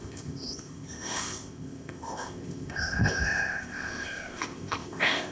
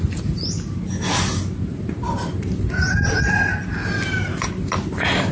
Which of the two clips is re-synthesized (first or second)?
first